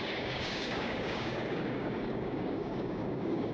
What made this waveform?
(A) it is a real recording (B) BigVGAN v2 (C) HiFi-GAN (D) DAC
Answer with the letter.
D